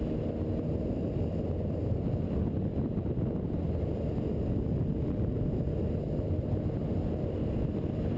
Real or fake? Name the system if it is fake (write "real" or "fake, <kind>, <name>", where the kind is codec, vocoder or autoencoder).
real